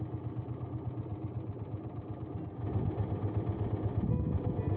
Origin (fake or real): real